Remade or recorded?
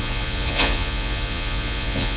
remade